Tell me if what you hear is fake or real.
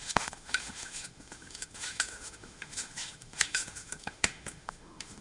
fake